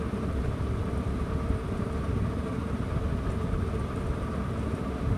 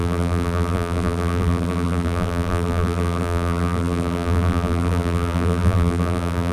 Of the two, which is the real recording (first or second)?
first